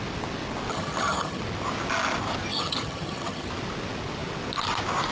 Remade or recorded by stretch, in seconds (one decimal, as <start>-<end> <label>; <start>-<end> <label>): 0.0-0.7 recorded; 0.7-1.4 remade; 1.4-2.5 recorded; 2.5-3.5 remade; 3.5-5.1 recorded